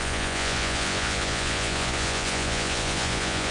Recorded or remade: remade